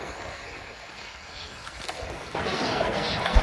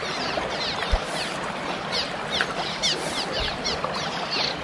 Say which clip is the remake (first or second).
first